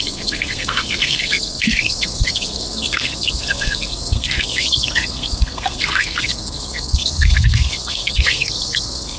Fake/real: fake